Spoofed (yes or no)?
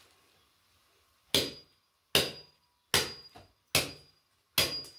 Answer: no